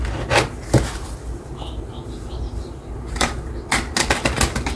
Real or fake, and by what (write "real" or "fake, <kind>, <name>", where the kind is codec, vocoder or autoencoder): real